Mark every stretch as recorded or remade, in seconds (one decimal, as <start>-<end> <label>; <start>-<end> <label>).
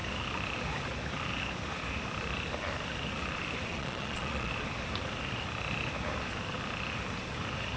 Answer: 0.0-3.7 recorded; 3.7-4.5 remade; 4.5-7.8 recorded